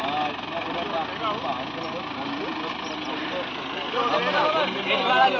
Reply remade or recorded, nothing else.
recorded